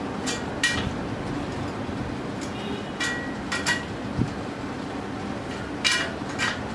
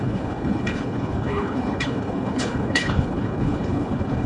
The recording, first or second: first